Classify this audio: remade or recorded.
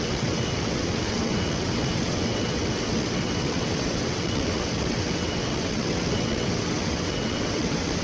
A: remade